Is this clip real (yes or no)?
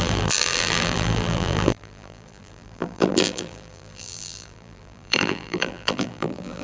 no